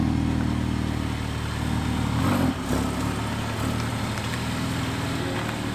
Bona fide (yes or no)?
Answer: yes